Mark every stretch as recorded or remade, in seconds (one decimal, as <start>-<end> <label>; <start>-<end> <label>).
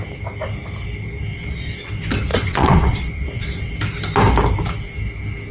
0.0-1.3 recorded; 1.3-1.9 remade; 1.9-2.3 recorded; 2.3-3.7 remade; 3.7-5.5 recorded